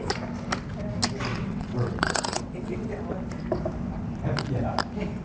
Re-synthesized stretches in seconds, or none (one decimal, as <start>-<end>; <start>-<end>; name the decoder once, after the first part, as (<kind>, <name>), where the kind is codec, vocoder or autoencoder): 1.3-3.0 (vocoder, WaveNeXt)